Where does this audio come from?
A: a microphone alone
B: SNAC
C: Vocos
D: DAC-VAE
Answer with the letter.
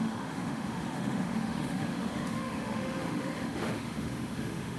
D